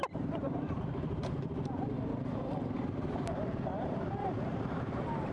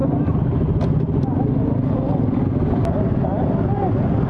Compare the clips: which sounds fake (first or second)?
first